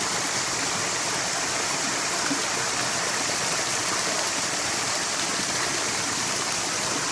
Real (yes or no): yes